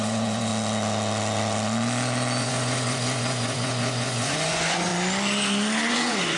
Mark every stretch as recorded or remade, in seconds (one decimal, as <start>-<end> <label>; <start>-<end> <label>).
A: 0.0-0.5 remade; 0.5-2.4 recorded; 2.4-4.9 remade; 4.9-5.9 recorded; 5.9-6.4 remade